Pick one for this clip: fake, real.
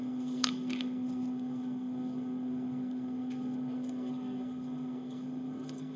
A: fake